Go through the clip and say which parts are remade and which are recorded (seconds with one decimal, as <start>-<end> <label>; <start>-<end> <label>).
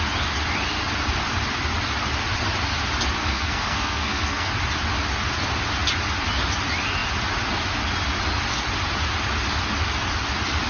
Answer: 0.0-3.2 recorded; 3.2-4.5 remade; 4.5-10.7 recorded